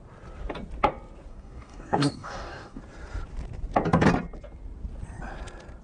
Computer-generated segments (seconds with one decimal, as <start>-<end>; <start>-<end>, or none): 1.3-2.8